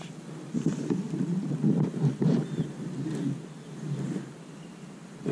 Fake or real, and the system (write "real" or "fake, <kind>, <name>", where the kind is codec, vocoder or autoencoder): real